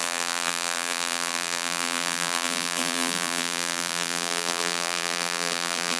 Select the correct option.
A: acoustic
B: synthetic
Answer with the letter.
B